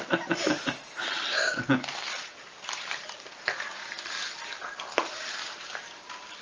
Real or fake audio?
fake